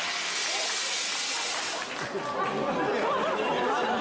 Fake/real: real